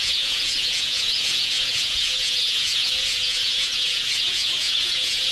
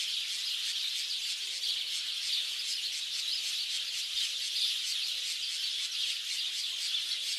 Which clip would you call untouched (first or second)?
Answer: second